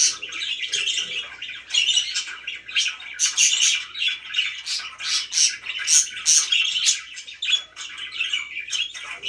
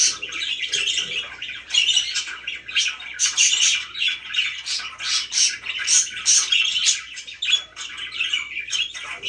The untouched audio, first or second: first